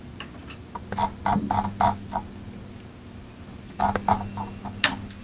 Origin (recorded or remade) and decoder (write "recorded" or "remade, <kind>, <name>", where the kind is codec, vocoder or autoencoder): recorded